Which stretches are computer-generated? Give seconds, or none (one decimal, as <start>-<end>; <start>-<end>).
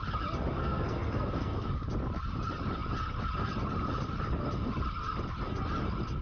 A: 0.6-1.7